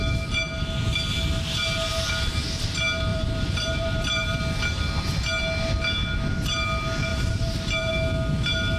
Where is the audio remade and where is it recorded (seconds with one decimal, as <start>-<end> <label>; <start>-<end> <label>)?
0.0-3.1 recorded; 3.1-4.4 remade; 4.4-7.1 recorded; 7.1-7.9 remade; 7.9-8.8 recorded